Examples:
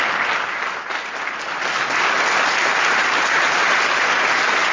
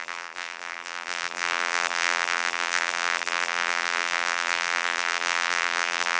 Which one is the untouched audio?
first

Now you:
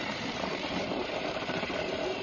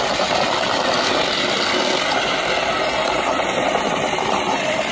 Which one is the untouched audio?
second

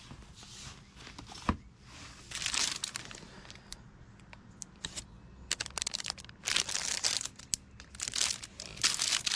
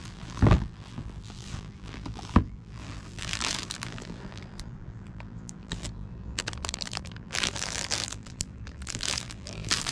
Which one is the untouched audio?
first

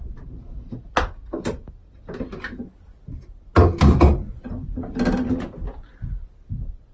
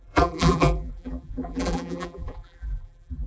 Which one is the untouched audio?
first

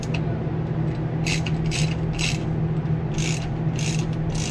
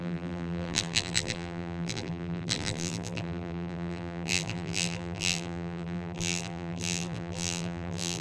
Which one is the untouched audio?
first